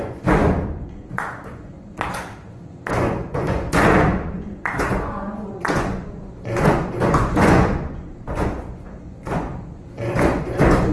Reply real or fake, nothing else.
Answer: fake